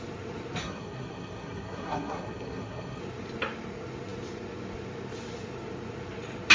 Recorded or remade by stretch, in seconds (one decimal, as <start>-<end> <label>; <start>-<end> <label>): 0.0-0.6 recorded; 0.6-3.0 remade; 3.0-6.5 recorded